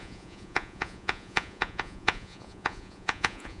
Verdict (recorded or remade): remade